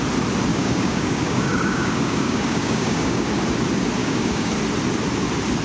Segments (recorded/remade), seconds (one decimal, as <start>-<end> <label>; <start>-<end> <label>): 0.0-0.5 recorded; 0.5-3.3 remade; 3.3-4.0 recorded; 4.0-4.5 remade; 4.5-5.6 recorded